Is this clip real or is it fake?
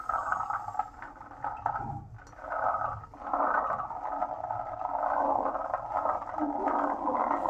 real